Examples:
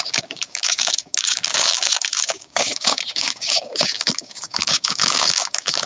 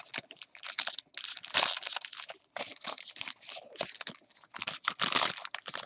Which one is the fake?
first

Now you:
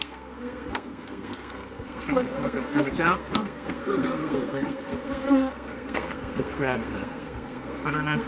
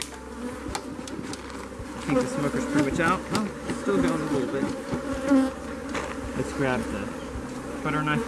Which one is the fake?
first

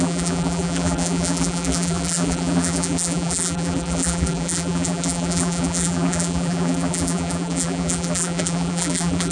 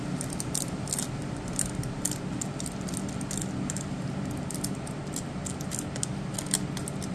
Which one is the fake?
first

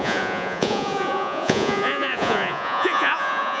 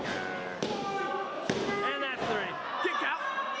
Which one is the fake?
first